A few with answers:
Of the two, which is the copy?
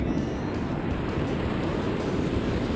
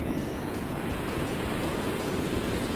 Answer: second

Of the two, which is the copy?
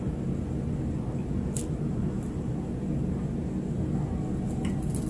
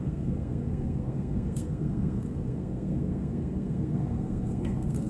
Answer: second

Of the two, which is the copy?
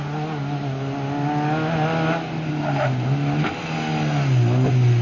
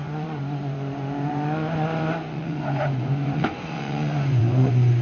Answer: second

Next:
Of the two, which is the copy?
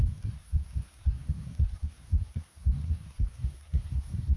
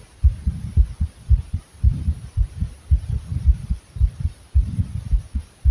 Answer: first